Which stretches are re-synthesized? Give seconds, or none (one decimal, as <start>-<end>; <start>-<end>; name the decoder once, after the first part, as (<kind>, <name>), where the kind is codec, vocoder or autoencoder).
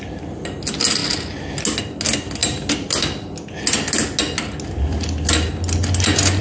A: none